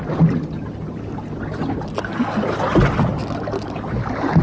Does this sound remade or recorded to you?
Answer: recorded